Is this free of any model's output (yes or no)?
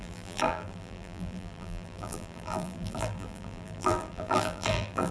no